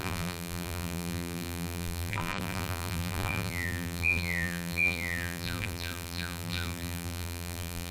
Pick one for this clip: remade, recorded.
remade